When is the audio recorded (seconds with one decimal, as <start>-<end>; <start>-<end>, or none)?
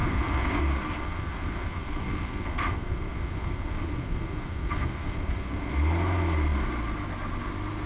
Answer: 0.6-1.0; 5.7-7.9